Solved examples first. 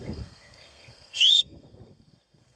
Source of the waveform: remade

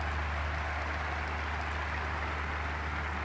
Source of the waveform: recorded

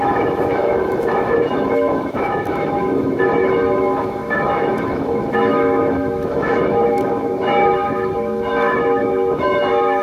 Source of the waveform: remade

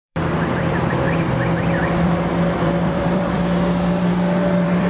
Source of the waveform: remade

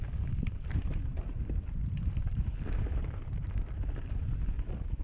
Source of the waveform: remade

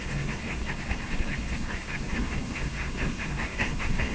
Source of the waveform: remade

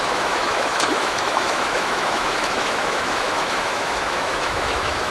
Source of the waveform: remade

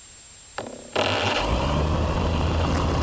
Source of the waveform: recorded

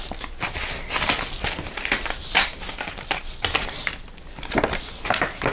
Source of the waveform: recorded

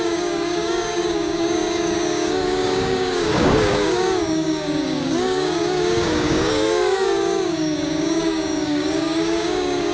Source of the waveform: remade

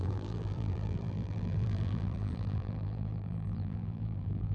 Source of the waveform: remade